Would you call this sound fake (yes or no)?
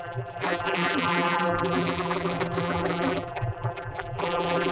yes